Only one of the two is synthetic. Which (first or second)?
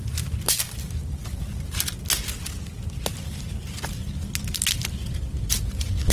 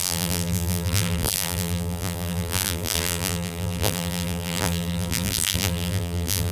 second